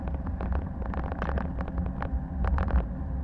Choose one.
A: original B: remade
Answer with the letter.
A